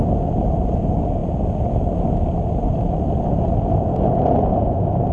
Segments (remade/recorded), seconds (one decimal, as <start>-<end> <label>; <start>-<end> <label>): 0.0-5.1 recorded

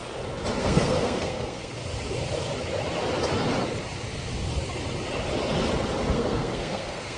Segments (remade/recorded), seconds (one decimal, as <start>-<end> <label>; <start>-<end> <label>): 0.0-0.6 recorded; 0.6-1.8 remade; 1.8-6.1 recorded; 6.1-7.2 remade

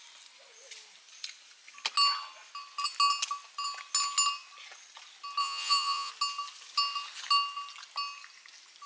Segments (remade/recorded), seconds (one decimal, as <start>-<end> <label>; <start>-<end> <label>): 0.0-5.4 recorded; 5.4-6.1 remade; 6.1-8.9 recorded

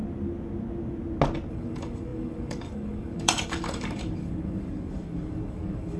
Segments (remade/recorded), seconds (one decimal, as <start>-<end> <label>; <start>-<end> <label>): 0.0-1.5 recorded; 1.5-6.0 remade

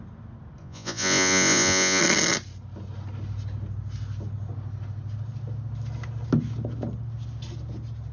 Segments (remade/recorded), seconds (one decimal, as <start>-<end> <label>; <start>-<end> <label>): 0.0-0.6 recorded; 0.6-2.0 remade; 2.0-8.1 recorded

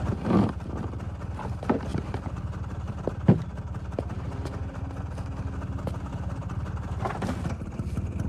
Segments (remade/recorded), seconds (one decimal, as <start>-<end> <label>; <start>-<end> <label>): 0.0-8.3 recorded